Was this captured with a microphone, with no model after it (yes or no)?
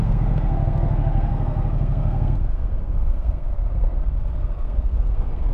no